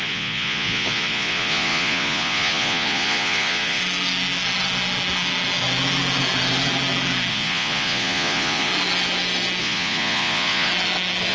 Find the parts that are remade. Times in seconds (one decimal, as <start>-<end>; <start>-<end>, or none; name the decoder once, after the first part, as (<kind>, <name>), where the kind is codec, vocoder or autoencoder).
0.0-3.8 (vocoder, Vocos); 7.3-8.7; 9.6-10.7